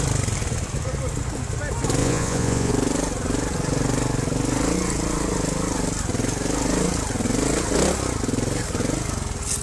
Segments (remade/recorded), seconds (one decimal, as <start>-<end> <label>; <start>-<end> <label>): 0.0-2.0 recorded; 2.0-2.7 remade; 2.7-9.6 recorded